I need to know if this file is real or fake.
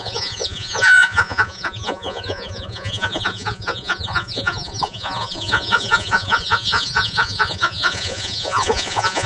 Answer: fake